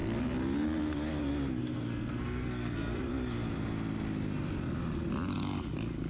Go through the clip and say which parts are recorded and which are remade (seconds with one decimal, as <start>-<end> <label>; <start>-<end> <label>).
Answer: 0.0-1.6 recorded; 1.6-3.1 remade; 3.1-6.1 recorded